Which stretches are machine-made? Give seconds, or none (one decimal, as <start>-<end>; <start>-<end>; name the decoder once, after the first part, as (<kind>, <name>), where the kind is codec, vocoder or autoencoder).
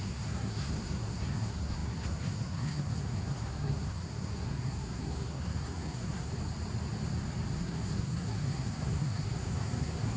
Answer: 0.0-6.3 (codec, SNAC); 7.5-10.2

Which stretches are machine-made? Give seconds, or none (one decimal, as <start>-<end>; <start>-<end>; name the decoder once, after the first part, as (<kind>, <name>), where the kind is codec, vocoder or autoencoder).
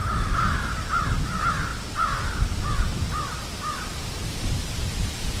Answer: none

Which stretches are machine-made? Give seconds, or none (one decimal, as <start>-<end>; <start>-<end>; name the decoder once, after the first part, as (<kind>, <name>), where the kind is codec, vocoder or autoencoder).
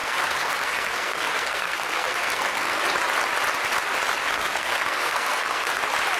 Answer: 0.0-2.8 (codec, SNAC); 4.2-5.8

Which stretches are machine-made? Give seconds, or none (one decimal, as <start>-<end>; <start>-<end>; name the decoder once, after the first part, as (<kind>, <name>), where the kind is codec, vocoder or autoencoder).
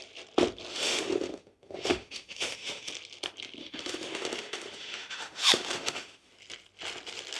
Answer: 0.7-2.9 (autoencoder, DAC-VAE); 3.6-6.3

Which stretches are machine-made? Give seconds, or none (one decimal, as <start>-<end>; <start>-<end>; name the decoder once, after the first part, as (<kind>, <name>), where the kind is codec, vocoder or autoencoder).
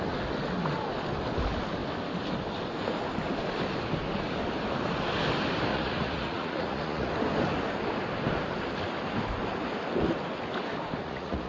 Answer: 5.7-7.1 (vocoder, Vocos); 11.0-11.5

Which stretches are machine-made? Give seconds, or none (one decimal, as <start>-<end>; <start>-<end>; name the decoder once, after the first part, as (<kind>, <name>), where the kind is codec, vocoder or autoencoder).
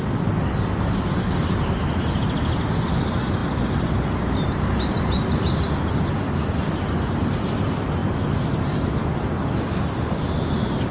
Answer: none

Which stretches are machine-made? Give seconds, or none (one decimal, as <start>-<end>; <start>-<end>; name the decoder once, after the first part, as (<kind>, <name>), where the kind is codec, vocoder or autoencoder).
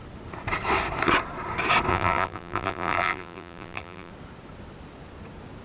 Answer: 1.9-4.1 (vocoder, BigVGAN v2)